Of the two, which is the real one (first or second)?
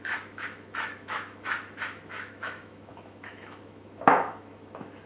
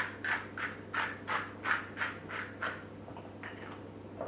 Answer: second